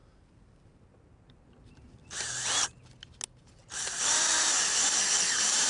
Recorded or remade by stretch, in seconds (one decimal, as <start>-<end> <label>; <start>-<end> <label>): 0.0-3.4 recorded; 3.4-4.3 remade; 4.3-5.3 recorded; 5.3-5.7 remade